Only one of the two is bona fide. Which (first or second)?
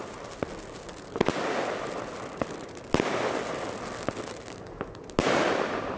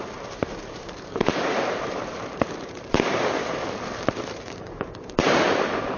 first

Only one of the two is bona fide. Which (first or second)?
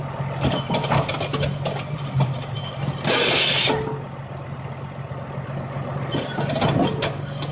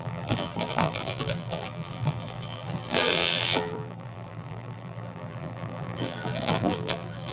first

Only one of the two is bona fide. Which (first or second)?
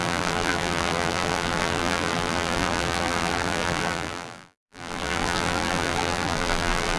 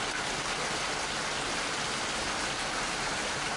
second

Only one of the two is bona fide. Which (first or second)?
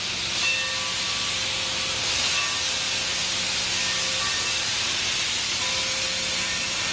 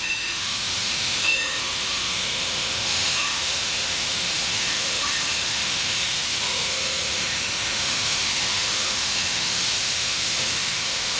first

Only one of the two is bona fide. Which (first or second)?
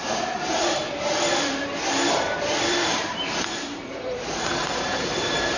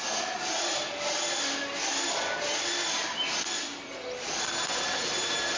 second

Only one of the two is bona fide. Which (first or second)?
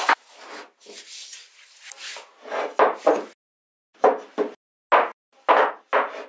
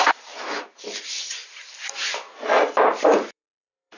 first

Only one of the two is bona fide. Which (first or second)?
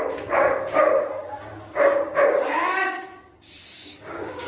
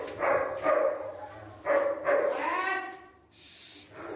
second